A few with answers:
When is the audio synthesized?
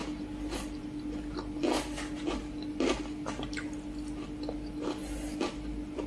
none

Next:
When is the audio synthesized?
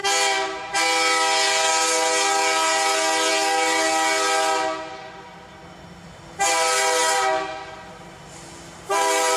none